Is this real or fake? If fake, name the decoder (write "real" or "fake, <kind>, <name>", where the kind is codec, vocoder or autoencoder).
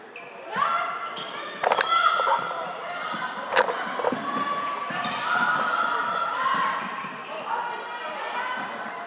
real